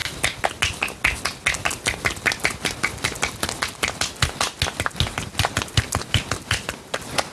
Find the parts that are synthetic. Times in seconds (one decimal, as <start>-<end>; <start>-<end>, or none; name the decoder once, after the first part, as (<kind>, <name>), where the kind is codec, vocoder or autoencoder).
none